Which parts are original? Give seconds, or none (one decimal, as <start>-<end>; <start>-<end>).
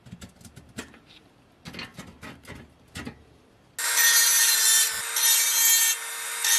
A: 0.0-6.6